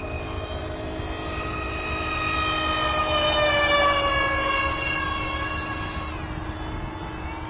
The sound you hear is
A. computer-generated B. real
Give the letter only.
B